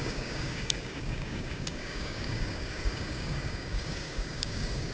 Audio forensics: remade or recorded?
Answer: remade